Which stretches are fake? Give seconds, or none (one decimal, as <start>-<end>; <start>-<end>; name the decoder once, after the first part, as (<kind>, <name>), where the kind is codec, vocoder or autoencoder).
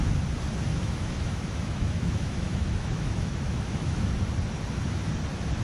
0.7-4.1 (autoencoder, DAC-VAE)